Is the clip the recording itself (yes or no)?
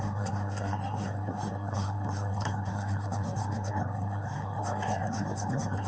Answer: no